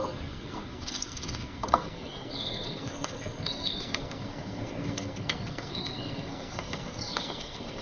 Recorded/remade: remade